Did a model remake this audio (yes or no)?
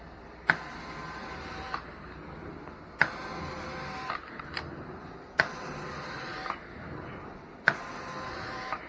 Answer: no